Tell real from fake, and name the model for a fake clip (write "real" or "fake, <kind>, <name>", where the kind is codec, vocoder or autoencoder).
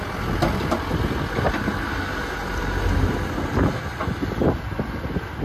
real